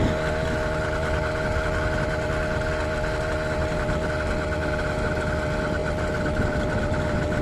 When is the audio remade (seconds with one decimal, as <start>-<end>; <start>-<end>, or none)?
none